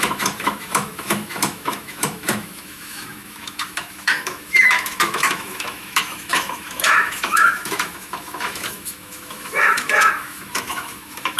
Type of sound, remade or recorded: remade